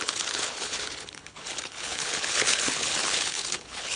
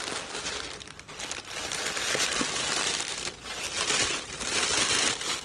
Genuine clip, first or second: second